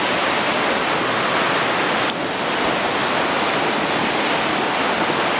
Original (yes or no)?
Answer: yes